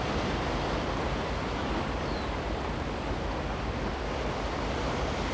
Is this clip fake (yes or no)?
no